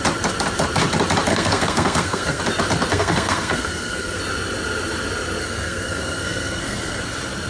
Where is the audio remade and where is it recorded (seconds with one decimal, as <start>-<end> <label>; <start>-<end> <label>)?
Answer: 0.0-1.3 recorded; 1.3-2.4 remade; 2.4-2.9 recorded; 2.9-4.2 remade; 4.2-5.4 recorded; 5.4-7.0 remade; 7.0-7.5 recorded